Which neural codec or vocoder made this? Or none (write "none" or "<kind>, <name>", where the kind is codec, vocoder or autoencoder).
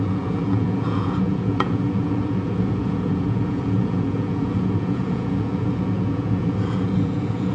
vocoder, Vocos